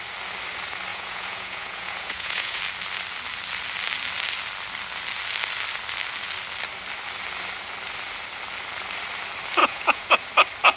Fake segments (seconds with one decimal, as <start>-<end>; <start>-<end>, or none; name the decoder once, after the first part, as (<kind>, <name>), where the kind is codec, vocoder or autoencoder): 0.9-2.6 (vocoder, Vocos); 9.6-10.1